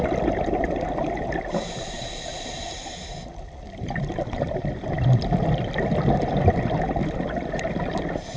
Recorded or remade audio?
recorded